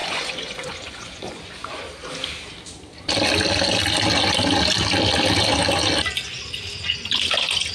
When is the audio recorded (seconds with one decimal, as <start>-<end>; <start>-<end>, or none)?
1.8-7.7